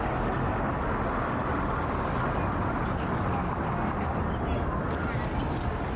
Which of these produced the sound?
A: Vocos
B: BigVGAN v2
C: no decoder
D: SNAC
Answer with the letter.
C